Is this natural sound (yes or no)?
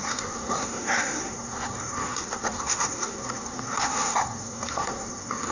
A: no